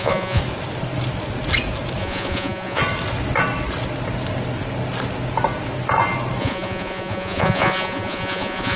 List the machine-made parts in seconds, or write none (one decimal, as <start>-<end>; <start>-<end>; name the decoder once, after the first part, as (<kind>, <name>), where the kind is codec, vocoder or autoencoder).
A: 0.0-0.4 (vocoder, Vocos); 2.0-2.8; 6.4-8.8